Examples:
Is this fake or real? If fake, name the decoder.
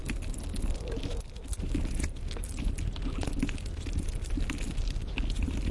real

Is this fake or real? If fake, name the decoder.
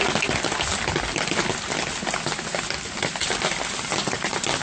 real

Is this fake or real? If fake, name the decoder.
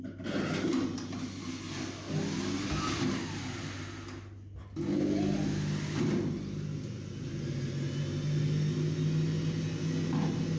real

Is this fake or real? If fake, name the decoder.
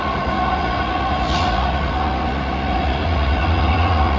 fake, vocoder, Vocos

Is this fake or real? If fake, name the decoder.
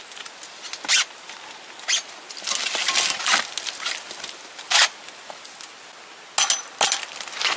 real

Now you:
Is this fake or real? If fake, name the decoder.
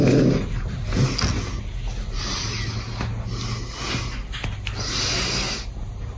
real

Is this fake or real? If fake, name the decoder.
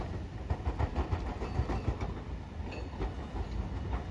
real